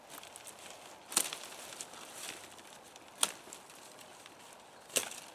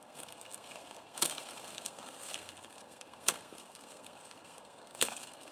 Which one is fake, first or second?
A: second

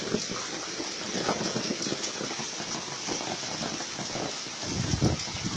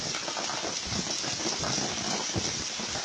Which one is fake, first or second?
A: second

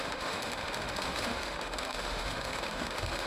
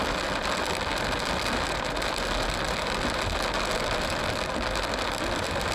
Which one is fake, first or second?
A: first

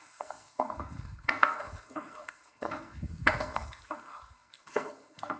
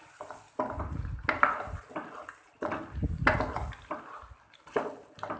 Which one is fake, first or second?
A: first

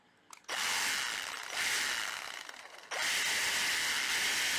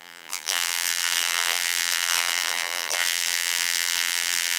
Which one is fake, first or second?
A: second